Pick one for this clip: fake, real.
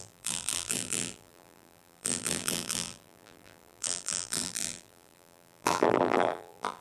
fake